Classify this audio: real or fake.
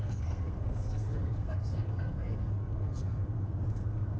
fake